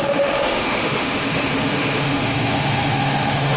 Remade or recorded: remade